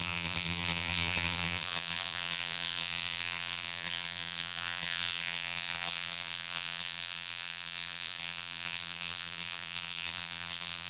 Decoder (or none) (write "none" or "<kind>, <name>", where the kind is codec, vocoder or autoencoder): vocoder, BigVGAN v2